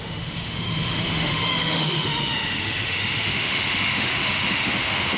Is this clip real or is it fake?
fake